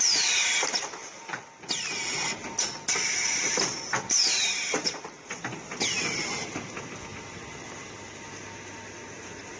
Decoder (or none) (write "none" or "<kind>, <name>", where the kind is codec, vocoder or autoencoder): none